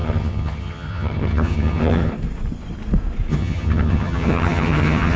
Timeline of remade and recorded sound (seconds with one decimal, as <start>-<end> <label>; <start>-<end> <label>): 0.0-2.1 remade; 2.1-3.3 recorded; 3.3-5.2 remade